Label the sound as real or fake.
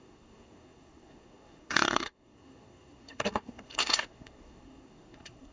fake